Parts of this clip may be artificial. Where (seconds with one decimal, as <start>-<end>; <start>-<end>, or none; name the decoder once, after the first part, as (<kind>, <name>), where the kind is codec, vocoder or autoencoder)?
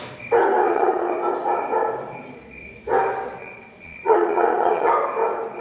0.6-1.1 (vocoder, Vocos); 3.4-4.9